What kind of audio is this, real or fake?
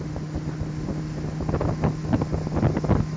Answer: real